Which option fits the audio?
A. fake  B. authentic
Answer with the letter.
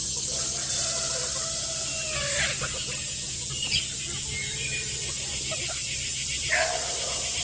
B